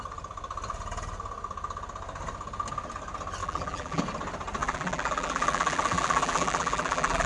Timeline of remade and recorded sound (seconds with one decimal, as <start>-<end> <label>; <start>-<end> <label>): 0.0-3.4 recorded; 3.4-4.0 remade; 4.0-4.6 recorded; 4.6-7.3 remade